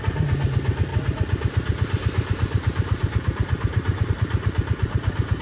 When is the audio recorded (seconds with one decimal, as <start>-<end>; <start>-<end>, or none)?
0.0-5.4